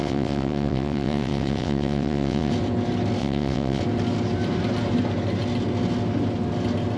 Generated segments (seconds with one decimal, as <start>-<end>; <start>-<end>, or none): 0.0-2.5; 3.2-3.8